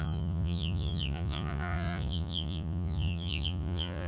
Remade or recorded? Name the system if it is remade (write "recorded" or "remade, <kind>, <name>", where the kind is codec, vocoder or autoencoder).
remade, vocoder, Vocos